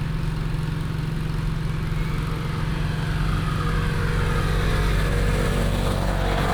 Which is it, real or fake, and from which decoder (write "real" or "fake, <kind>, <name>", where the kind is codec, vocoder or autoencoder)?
real